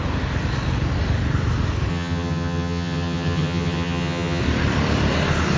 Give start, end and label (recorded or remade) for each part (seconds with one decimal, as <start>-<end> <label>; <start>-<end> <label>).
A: 0.0-1.9 recorded; 1.9-4.4 remade; 4.4-5.6 recorded